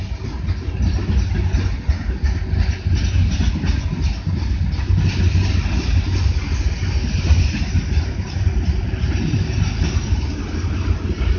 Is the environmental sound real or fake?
real